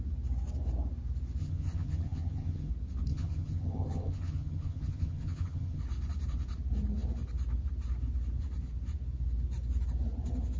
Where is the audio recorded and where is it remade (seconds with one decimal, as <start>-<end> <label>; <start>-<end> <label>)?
0.0-1.4 recorded; 1.4-2.7 remade; 2.7-3.1 recorded; 3.1-5.8 remade; 5.8-10.6 recorded